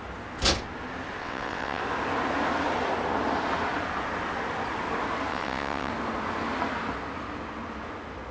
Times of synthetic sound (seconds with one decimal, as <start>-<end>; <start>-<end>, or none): 1.2-1.8; 5.3-5.9